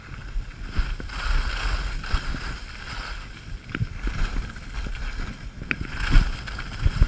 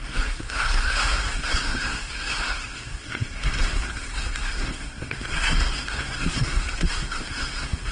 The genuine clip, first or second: first